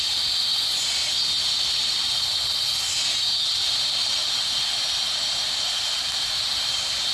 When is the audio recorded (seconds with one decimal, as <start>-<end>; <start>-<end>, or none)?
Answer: 0.0-0.5; 1.0-7.1